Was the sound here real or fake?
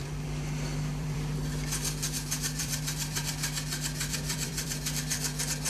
fake